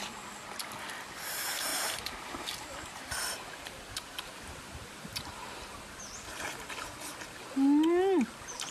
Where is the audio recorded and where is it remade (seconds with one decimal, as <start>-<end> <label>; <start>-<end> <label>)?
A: 0.0-1.7 recorded; 1.7-6.1 remade; 6.1-8.7 recorded